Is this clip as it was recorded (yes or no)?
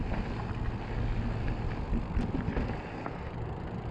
yes